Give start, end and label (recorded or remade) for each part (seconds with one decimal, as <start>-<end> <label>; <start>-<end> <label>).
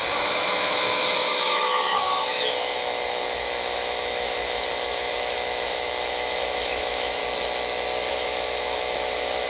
0.0-7.2 remade; 7.2-8.1 recorded; 8.1-9.5 remade